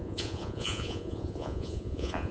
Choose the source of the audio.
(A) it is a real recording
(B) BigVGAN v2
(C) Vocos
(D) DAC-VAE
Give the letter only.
C